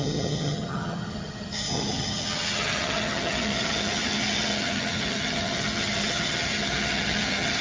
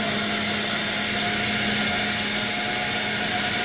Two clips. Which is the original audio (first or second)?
second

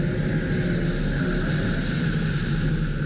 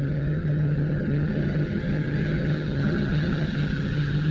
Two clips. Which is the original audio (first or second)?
first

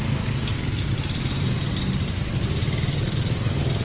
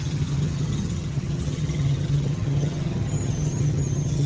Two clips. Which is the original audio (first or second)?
first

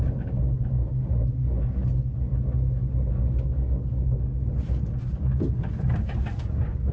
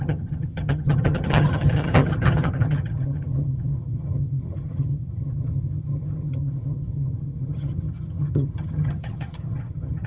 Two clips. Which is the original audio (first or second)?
first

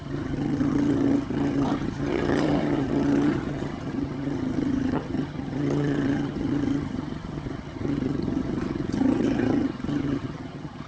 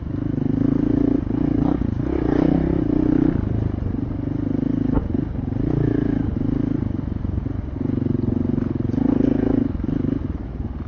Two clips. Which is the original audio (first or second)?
second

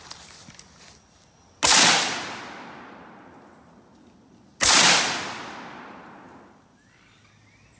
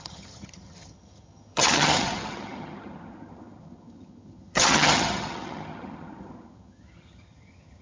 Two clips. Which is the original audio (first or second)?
first